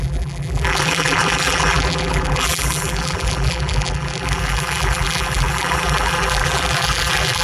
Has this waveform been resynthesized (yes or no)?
yes